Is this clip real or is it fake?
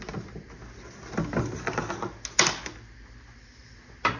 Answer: real